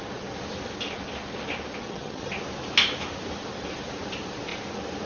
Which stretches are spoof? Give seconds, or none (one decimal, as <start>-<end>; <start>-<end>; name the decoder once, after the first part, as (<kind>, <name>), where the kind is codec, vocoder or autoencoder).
1.8-2.3 (vocoder, HiFi-GAN)